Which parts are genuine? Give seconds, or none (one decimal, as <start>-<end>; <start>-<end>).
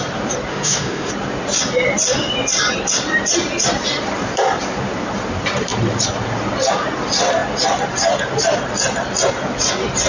0.0-0.5; 1.1-10.1